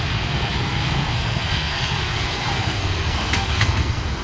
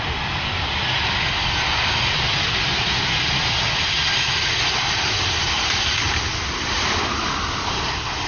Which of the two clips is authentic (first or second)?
second